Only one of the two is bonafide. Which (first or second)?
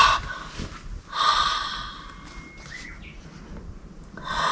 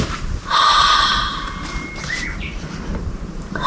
first